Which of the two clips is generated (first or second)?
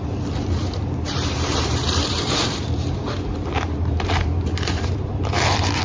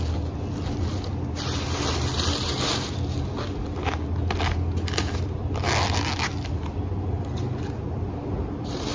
first